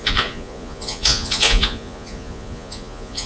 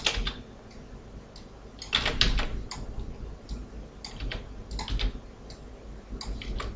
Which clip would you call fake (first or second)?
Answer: first